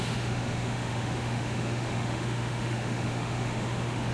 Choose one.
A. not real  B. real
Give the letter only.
A